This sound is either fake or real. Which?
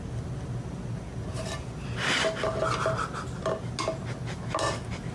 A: real